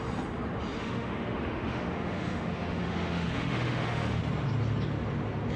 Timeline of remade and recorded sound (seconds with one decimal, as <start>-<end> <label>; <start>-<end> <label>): 0.0-0.8 recorded; 0.8-4.2 remade; 4.2-5.6 recorded